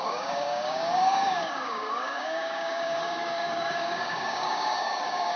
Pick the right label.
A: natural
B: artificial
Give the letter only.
B